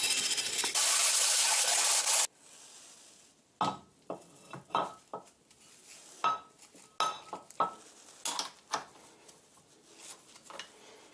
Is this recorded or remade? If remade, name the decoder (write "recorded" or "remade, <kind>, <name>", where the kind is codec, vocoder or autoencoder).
recorded